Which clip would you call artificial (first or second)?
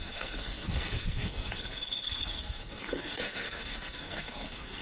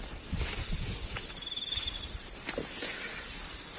first